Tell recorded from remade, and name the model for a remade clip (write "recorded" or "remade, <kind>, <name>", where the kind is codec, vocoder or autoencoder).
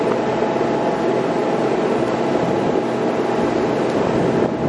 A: recorded